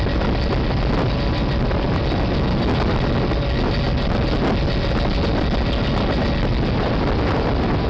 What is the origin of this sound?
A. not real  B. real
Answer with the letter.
B